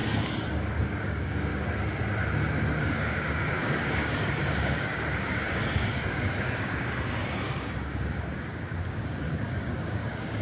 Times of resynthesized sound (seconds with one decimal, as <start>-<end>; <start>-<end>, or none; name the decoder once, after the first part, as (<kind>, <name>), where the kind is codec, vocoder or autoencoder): 0.8-1.5 (codec, DAC); 2.8-10.4